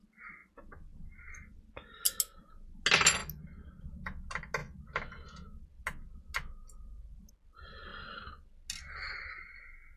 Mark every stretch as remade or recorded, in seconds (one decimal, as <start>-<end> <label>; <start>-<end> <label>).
0.0-10.0 recorded